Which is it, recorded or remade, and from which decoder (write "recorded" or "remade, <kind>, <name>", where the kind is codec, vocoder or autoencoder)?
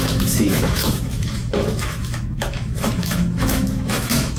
remade, autoencoder, DAC-VAE